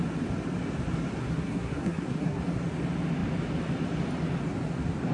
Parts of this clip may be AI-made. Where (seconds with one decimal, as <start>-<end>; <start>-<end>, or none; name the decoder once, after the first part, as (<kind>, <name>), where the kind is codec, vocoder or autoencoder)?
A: 1.2-2.4 (codec, SNAC)